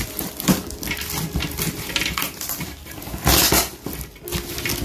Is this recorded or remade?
recorded